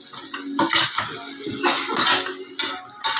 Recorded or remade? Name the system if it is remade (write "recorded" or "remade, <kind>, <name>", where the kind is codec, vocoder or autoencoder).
recorded